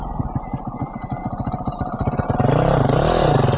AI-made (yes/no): no